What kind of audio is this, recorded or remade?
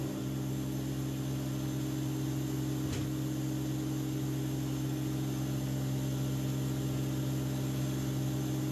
recorded